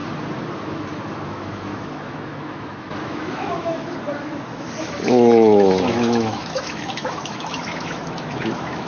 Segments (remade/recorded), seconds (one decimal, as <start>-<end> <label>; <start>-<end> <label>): 0.0-0.5 recorded; 0.5-8.9 remade